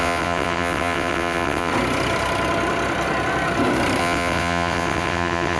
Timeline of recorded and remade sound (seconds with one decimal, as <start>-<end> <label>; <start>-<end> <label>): 0.0-1.7 remade; 1.7-4.0 recorded; 4.0-5.6 remade